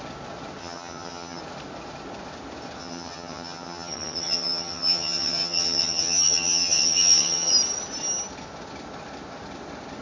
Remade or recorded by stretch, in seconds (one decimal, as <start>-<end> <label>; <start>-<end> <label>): 0.0-0.6 recorded; 0.6-1.4 remade; 1.4-2.8 recorded; 2.8-7.5 remade; 7.5-10.0 recorded